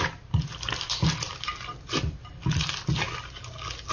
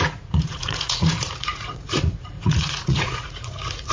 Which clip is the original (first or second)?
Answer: first